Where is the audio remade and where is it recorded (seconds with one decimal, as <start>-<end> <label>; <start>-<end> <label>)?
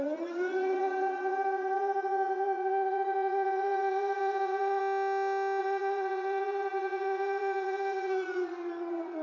0.0-4.8 remade; 4.8-5.6 recorded; 5.6-9.2 remade